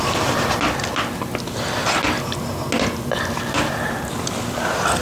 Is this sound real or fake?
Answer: real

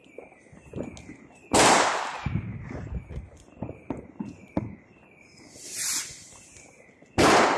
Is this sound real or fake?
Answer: real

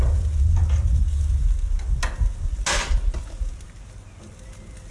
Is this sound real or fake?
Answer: real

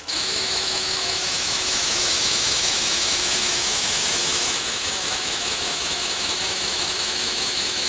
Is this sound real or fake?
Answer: fake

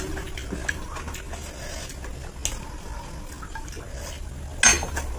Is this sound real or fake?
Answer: real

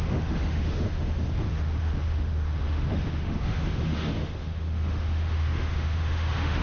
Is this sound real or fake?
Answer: fake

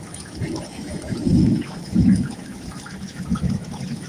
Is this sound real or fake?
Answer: fake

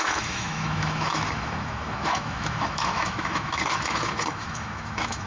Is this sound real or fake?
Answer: fake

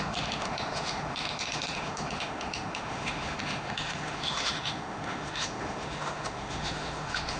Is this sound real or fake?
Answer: fake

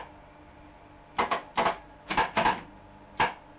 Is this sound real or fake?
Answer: real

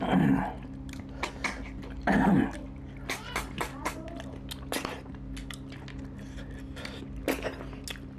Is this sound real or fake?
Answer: real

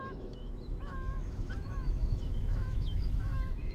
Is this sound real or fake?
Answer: fake